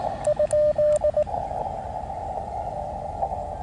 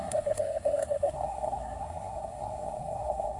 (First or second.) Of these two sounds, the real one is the first